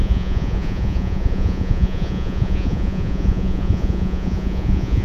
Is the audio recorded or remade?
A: remade